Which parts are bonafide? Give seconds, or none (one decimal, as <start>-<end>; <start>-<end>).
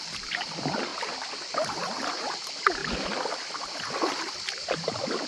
0.0-0.9; 1.4-5.3